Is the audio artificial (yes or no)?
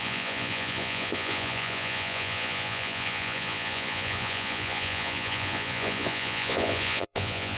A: yes